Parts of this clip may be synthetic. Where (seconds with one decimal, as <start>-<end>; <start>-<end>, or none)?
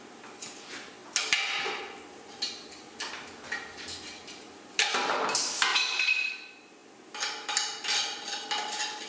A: 5.7-6.3